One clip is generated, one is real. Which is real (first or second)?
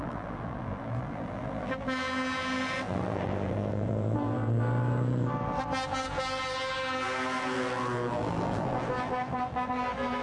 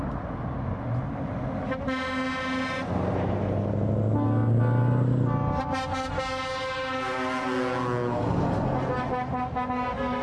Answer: second